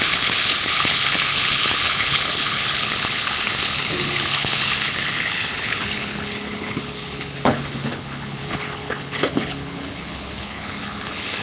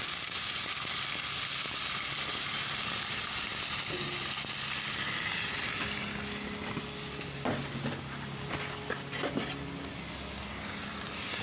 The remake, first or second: first